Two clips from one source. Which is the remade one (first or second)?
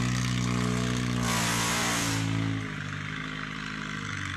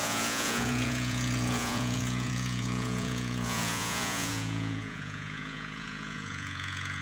second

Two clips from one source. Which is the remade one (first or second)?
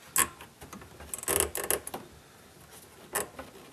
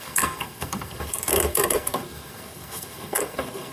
second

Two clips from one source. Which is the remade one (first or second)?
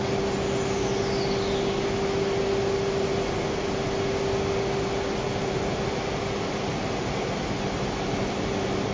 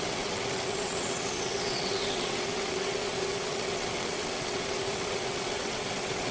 second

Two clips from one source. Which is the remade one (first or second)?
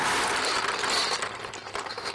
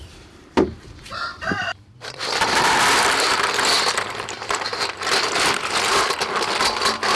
second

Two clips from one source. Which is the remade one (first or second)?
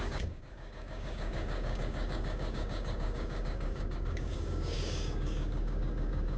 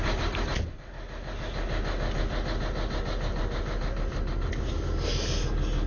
first